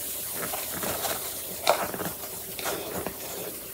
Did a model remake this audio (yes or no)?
yes